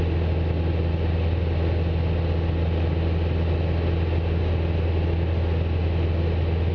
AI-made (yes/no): no